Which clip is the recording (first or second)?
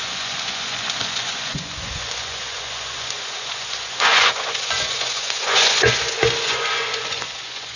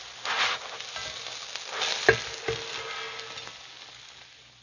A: second